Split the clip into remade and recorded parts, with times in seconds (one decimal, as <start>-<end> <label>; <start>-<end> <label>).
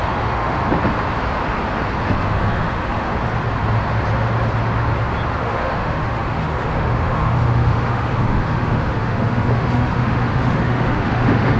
0.0-0.6 remade; 0.6-2.0 recorded; 2.0-3.1 remade; 3.1-5.4 recorded; 5.4-11.6 remade